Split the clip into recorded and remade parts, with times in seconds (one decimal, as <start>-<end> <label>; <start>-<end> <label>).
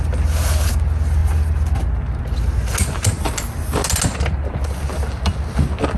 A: 0.0-6.0 recorded